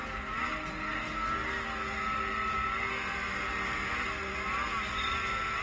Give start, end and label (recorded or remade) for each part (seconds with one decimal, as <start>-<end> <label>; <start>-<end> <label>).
0.0-5.6 recorded